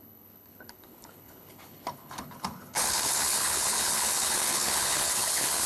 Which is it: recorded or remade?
remade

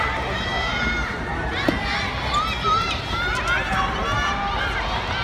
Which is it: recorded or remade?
recorded